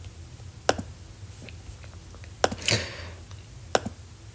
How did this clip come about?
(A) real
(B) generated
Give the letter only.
A